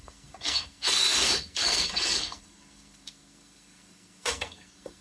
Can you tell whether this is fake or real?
fake